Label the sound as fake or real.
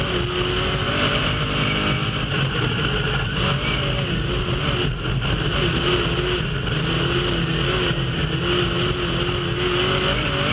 real